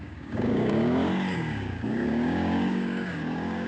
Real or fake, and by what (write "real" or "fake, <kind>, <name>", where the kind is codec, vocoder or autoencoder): fake, codec, DAC